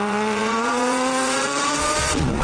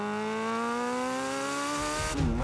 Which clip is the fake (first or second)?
first